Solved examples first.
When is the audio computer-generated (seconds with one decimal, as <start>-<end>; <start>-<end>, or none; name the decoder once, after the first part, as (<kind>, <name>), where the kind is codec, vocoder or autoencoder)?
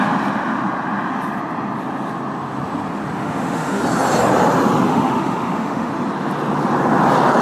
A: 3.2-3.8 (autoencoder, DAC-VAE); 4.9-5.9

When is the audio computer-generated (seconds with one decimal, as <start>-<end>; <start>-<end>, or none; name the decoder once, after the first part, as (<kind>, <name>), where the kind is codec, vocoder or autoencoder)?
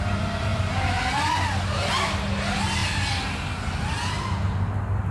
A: none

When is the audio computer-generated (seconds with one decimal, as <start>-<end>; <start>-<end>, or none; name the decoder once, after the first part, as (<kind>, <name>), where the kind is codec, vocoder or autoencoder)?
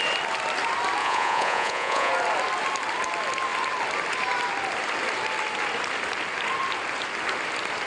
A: 1.0-2.1 (vocoder, Vocos)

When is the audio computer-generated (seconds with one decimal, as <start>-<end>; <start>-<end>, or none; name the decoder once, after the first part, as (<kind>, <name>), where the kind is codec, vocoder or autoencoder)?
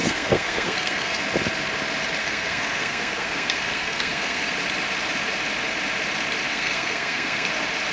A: 0.0-1.2 (codec, SNAC); 2.2-4.5; 6.5-7.5